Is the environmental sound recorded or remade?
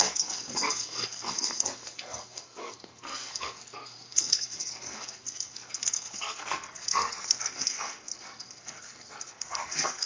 remade